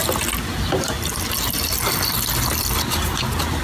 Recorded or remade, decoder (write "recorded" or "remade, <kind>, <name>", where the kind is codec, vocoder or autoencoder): recorded